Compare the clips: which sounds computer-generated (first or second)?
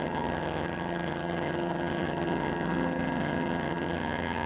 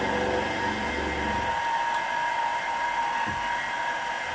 first